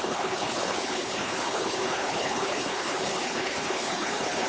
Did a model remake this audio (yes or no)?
yes